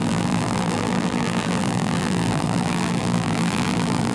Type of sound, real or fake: fake